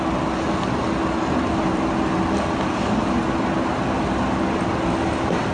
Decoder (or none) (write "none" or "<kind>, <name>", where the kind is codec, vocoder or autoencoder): none